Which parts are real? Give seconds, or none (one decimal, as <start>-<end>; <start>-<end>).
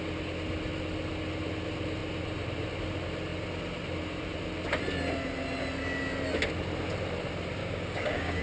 0.0-7.6